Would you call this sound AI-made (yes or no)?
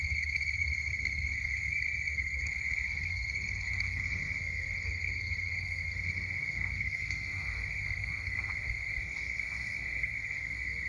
yes